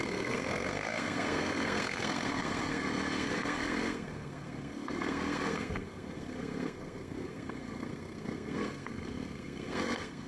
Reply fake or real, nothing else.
fake